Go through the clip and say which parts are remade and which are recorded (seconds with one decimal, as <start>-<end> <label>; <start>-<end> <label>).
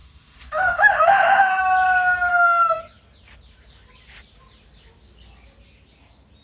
0.0-1.6 remade; 1.6-2.3 recorded; 2.3-2.8 remade; 2.8-6.4 recorded